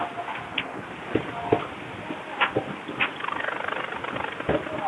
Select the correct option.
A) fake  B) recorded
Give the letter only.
B